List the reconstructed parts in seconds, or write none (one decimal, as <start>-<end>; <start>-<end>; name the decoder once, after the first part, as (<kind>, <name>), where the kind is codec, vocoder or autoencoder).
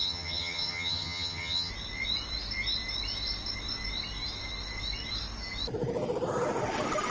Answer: 0.0-1.7 (vocoder, HiFi-GAN)